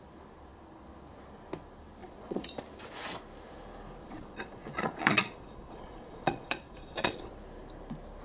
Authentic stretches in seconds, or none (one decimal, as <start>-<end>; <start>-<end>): 0.0-2.0; 2.5-4.0; 7.3-8.2